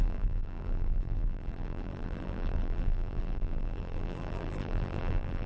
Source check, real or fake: fake